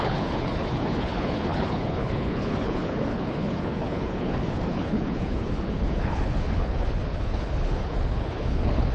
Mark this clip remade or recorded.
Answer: remade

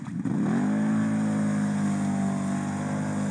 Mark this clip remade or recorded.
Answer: recorded